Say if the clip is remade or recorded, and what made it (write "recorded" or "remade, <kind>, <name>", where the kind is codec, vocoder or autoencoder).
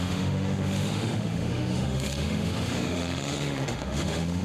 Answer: remade, autoencoder, DAC-VAE